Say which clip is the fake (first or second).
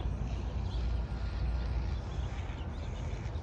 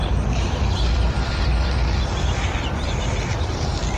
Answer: second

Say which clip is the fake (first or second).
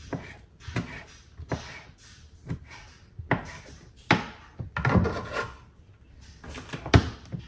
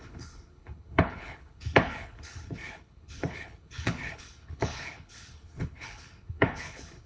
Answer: second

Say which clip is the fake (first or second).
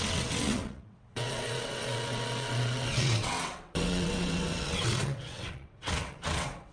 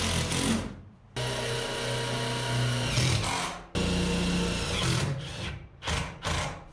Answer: first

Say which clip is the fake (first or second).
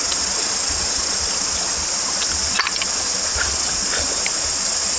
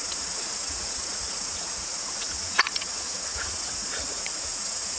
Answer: second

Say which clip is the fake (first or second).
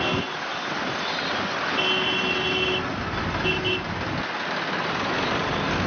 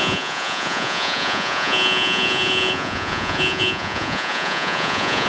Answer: second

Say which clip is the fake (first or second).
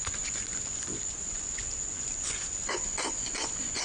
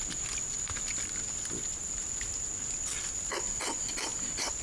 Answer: first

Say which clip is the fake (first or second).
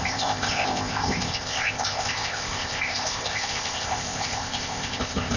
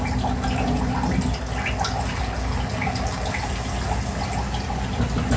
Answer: first